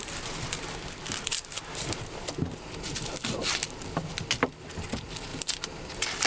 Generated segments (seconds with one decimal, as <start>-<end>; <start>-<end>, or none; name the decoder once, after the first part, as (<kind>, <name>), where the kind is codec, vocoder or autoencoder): none